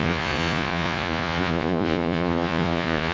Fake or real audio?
fake